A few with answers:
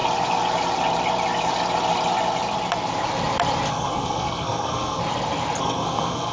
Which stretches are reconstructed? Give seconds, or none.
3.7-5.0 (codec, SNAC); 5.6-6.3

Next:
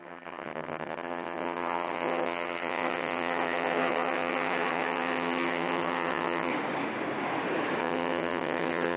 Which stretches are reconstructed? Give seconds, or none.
0.0-6.5 (vocoder, HiFi-GAN); 7.8-9.0

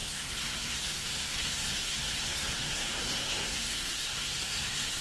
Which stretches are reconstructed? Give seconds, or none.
0.0-5.0 (codec, SNAC)

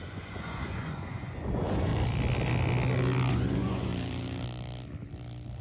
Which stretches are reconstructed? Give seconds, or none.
0.0-1.9 (vocoder, Vocos); 3.3-3.9

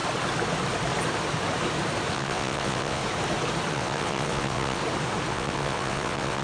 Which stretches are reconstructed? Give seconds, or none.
2.1-3.0 (vocoder, WaveNeXt); 3.7-4.8; 5.3-6.4

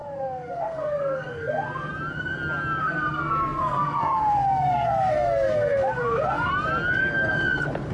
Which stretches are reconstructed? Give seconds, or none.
0.0-1.9 (codec, SNAC); 2.8-6.5

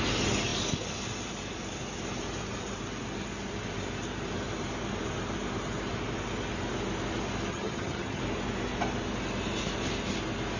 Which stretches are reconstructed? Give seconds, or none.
7.5-8.2 (vocoder, HiFi-GAN)

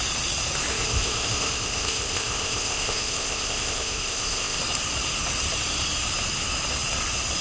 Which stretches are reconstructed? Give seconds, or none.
0.7-4.6 (codec, ZipCodec)